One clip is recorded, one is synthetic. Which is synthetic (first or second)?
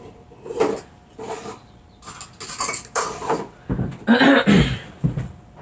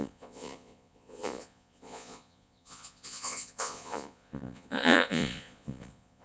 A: second